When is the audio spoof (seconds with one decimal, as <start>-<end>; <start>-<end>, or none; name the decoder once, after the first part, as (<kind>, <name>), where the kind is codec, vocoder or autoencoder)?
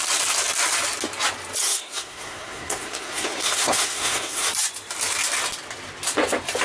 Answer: 1.6-4.5 (codec, SNAC)